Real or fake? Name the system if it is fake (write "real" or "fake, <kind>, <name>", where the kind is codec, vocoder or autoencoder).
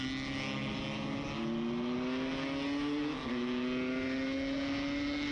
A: real